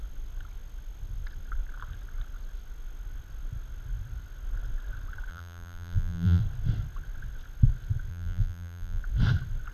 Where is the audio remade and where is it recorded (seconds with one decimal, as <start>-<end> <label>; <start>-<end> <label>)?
0.0-5.3 recorded; 5.3-6.4 remade; 6.4-8.1 recorded; 8.1-9.0 remade; 9.0-9.7 recorded